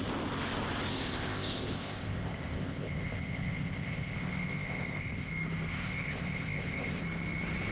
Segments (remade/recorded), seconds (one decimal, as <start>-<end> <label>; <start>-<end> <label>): 0.0-0.9 recorded; 0.9-5.3 remade; 5.3-5.7 recorded; 5.7-7.0 remade; 7.0-7.7 recorded